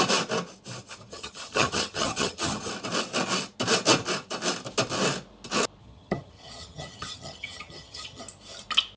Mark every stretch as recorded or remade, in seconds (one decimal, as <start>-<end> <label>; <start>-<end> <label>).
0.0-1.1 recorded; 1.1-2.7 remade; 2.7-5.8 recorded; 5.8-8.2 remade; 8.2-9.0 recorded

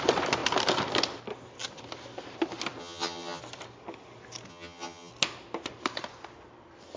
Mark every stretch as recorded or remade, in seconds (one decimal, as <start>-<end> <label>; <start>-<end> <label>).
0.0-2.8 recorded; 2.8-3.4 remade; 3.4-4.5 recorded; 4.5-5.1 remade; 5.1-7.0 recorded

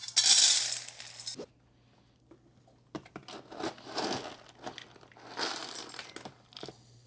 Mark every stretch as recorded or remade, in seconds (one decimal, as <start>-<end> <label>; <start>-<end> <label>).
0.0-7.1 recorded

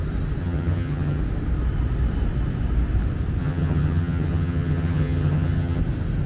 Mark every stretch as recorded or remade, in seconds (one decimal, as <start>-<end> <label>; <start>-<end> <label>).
0.0-0.4 recorded; 0.4-1.2 remade; 1.2-3.4 recorded; 3.4-5.8 remade; 5.8-6.3 recorded